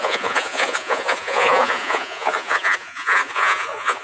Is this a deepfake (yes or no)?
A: yes